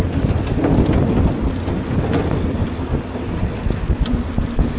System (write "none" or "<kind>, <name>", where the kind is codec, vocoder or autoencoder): none